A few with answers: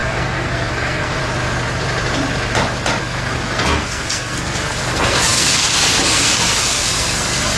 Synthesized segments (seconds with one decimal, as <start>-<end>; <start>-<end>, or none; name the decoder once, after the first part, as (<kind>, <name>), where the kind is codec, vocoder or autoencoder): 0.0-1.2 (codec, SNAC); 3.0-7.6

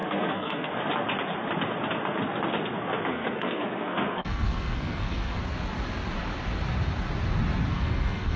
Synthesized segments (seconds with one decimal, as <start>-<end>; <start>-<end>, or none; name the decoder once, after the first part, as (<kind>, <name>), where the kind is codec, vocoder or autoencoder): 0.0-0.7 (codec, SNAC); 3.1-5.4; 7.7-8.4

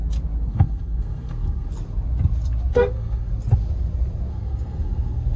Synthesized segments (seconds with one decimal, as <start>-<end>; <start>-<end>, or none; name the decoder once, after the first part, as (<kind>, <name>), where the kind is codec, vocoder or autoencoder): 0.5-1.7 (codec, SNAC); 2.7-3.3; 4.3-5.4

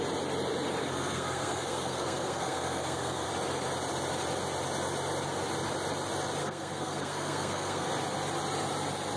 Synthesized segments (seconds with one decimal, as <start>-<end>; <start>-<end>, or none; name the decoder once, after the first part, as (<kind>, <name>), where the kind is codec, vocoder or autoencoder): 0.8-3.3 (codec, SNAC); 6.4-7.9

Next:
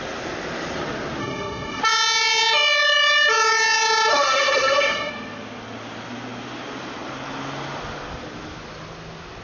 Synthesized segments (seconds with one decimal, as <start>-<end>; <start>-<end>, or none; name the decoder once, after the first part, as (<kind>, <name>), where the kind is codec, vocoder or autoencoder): 1.2-1.8 (codec, SNAC); 4.1-5.1

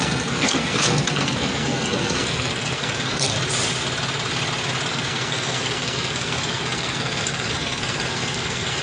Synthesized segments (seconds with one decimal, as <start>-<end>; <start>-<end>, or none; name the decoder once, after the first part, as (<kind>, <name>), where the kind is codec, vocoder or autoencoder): 0.0-3.3 (codec, SNAC); 4.9-8.8

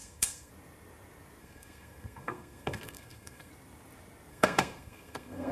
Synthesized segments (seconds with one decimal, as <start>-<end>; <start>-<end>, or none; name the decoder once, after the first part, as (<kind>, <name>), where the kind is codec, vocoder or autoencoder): 0.0-0.5 (codec, SNAC); 1.4-3.5; 4.3-5.5

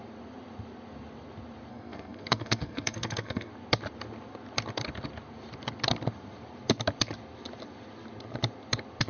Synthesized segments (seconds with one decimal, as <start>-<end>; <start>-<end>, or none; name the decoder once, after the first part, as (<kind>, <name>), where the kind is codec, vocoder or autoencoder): 1.7-3.5 (codec, SNAC)